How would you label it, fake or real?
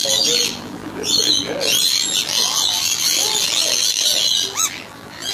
fake